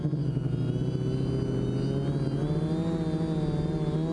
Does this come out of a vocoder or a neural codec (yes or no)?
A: no